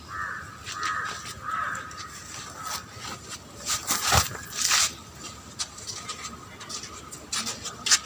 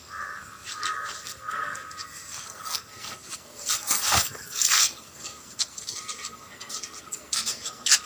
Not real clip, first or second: second